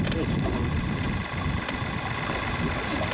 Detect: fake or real real